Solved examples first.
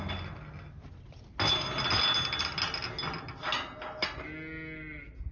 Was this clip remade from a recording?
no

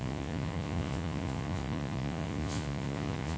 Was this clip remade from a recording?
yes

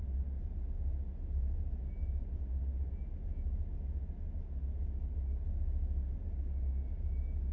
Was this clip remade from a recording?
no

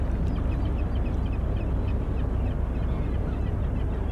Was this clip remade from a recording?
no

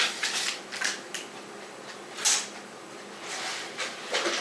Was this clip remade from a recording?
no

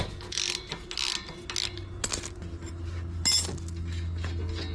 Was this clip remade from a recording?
no